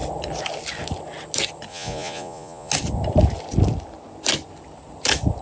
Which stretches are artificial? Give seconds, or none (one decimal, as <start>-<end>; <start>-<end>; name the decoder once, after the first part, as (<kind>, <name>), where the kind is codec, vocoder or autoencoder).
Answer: 1.7-2.7 (vocoder, Vocos)